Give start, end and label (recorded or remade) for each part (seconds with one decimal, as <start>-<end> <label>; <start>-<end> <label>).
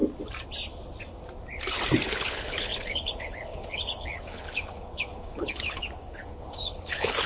0.0-2.1 recorded; 2.1-7.3 remade